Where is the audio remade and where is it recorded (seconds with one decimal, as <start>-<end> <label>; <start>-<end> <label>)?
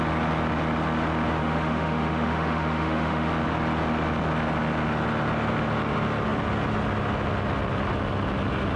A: 0.0-1.4 recorded; 1.4-3.3 remade; 3.3-8.8 recorded